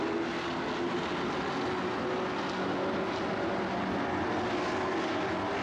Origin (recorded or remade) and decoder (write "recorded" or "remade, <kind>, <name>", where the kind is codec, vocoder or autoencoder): recorded